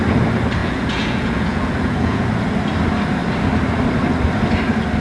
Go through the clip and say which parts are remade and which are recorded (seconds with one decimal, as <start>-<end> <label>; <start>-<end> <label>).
0.0-0.6 recorded; 0.6-2.3 remade; 2.3-5.0 recorded